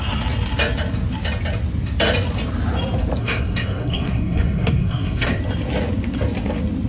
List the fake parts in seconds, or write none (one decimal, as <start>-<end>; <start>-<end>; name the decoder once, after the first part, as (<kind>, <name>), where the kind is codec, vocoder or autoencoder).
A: 3.2-5.4 (codec, SNAC)